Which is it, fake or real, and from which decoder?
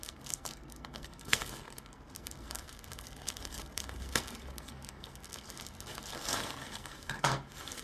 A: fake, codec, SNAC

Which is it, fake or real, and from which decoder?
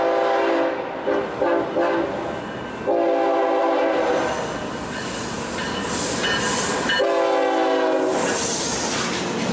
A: real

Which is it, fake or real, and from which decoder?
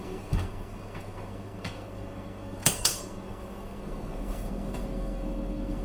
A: fake, codec, SNAC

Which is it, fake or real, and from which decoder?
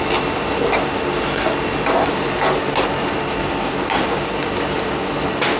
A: real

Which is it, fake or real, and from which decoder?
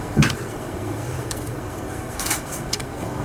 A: fake, codec, SNAC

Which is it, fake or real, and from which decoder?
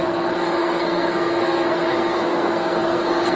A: fake, codec, SNAC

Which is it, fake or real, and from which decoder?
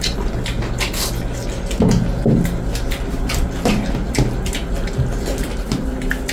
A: real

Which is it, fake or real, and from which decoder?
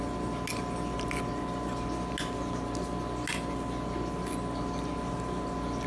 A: real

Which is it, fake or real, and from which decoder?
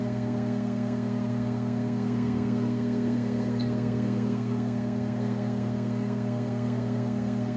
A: fake, codec, SNAC